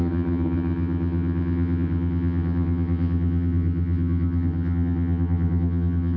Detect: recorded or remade remade